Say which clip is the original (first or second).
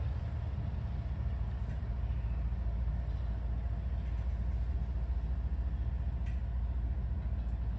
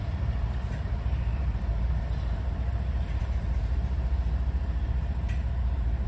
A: first